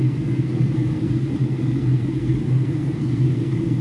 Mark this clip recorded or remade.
remade